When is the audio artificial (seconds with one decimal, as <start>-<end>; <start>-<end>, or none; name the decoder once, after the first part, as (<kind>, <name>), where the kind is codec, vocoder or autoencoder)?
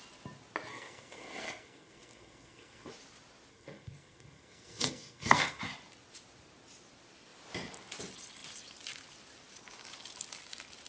0.7-2.9 (codec, SNAC); 3.5-5.6